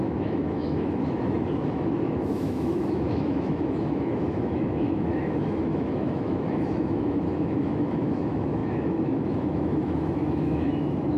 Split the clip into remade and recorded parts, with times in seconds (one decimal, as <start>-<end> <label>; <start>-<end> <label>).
0.0-11.2 remade